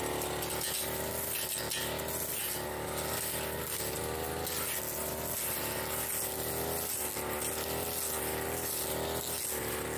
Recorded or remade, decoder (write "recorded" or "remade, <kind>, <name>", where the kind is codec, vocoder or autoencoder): recorded